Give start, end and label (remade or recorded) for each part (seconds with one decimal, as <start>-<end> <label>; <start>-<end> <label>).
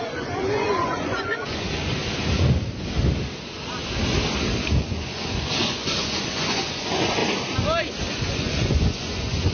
0.0-2.0 remade; 2.0-4.8 recorded; 4.8-7.2 remade; 7.2-8.1 recorded; 8.1-9.5 remade